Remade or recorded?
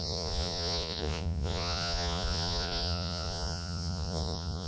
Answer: remade